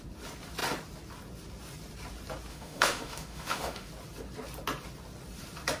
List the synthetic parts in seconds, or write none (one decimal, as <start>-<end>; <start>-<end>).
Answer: 2.5-3.9